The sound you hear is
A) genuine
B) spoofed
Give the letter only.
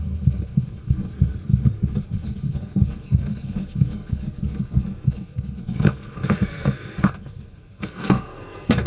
B